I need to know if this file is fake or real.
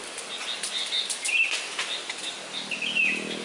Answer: real